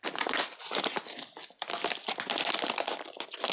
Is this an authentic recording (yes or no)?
yes